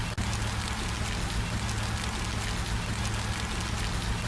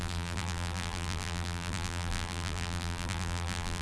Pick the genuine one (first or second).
first